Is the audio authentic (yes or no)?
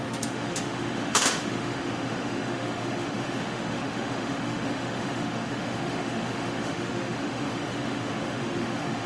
no